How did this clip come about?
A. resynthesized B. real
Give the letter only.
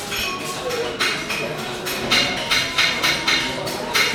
B